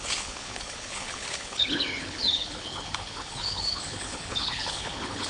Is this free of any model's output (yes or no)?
no